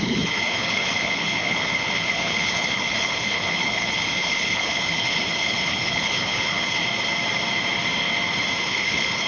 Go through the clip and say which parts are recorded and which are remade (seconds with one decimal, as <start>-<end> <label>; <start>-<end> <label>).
0.0-6.8 remade; 6.8-8.6 recorded; 8.6-9.3 remade